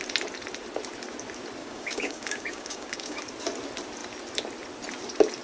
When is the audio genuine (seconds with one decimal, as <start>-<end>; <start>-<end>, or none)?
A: 0.0-1.6; 3.2-5.4